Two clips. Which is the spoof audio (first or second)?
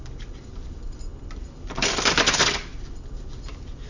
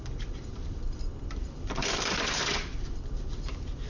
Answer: second